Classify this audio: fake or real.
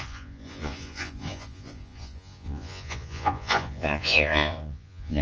fake